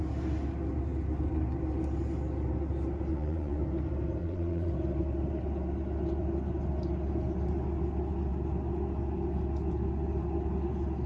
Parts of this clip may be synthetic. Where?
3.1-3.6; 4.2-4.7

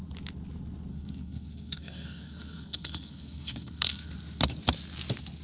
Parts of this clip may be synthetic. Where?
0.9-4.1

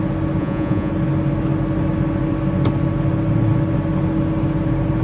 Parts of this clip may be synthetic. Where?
0.4-0.9

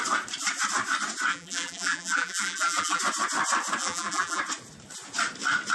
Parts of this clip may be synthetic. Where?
1.3-3.0; 3.8-4.4

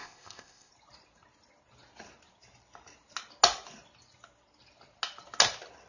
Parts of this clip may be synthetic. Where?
0.0-0.7

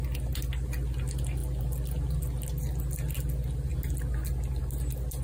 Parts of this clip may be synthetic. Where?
none

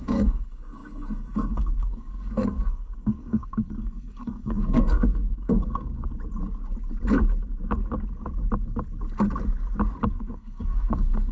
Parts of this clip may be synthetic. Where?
0.0-6.1; 10.1-11.3